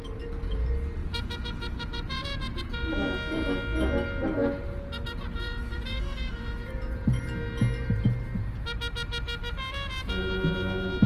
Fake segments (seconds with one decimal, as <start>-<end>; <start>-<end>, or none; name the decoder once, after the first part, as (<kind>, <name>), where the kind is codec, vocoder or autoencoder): 1.0-2.9 (vocoder, Vocos); 4.4-7.2